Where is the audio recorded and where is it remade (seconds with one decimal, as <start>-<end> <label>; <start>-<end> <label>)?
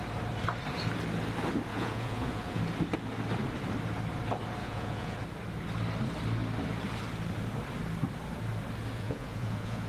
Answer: 0.0-1.7 recorded; 1.7-2.6 remade; 2.6-4.6 recorded; 4.6-5.2 remade; 5.2-8.9 recorded; 8.9-9.9 remade